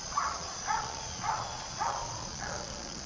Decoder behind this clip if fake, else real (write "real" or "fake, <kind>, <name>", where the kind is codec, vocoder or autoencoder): fake, vocoder, Vocos